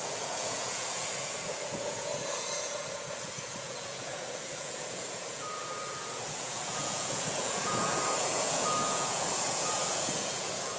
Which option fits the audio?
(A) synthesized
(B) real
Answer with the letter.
A